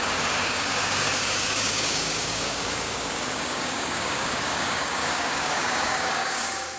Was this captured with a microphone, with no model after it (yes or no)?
no